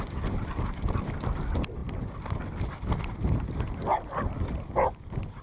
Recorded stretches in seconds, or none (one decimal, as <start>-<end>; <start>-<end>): 0.0-5.4